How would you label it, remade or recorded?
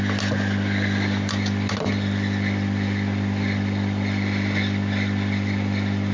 recorded